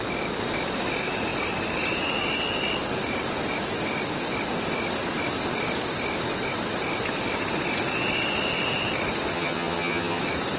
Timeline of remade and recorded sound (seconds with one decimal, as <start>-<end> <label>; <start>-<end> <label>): 0.0-9.3 recorded; 9.3-10.2 remade; 10.2-10.6 recorded